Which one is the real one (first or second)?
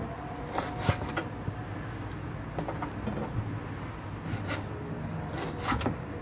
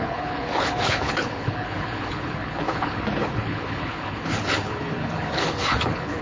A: first